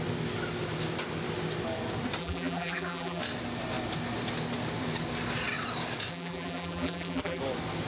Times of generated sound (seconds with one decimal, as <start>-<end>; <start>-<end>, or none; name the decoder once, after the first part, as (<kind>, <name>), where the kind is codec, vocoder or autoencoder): 2.2-3.2 (vocoder, BigVGAN v2); 6.1-7.4